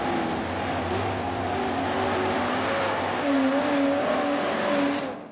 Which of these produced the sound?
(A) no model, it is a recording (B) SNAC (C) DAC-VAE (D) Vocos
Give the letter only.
A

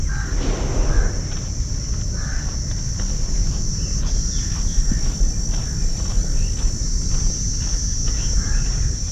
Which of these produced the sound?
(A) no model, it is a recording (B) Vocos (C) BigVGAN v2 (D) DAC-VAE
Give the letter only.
A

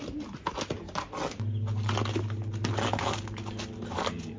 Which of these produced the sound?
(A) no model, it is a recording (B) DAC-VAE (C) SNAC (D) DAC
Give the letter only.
A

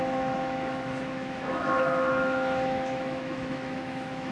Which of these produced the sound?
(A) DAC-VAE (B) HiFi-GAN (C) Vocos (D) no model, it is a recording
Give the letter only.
A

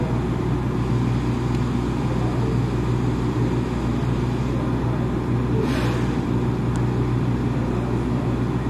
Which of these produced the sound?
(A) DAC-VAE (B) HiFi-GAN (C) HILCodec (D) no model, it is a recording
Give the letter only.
D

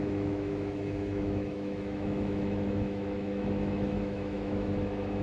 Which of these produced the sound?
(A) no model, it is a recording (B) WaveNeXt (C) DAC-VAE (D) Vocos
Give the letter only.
C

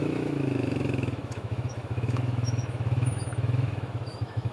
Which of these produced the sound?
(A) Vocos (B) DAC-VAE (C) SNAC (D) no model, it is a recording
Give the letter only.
B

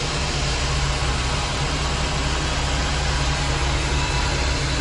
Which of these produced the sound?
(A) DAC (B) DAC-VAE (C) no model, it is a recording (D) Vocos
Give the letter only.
C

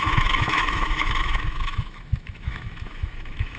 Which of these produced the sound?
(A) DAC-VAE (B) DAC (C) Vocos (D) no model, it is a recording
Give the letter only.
A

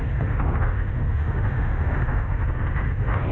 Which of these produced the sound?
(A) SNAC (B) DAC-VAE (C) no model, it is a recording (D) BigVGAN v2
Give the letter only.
B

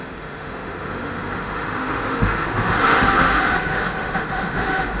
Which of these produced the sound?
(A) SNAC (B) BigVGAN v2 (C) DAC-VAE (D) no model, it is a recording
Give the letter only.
C